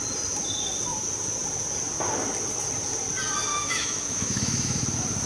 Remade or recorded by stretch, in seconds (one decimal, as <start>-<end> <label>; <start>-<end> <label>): 0.0-3.5 recorded; 3.5-4.8 remade; 4.8-5.3 recorded